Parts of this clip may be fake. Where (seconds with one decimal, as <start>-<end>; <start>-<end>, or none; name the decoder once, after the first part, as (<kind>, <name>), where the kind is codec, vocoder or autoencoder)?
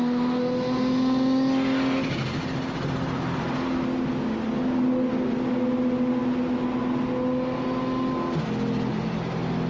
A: none